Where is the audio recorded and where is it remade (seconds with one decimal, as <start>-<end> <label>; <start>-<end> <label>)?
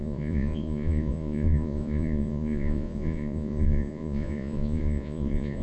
0.0-5.6 remade